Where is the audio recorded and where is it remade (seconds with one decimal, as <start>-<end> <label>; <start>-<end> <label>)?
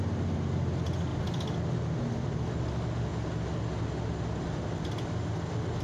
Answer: 0.0-5.8 recorded